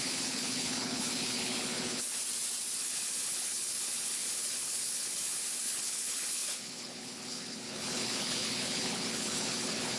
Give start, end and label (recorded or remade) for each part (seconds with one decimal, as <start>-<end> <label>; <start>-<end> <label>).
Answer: 0.0-2.2 remade; 2.2-2.8 recorded; 2.8-10.0 remade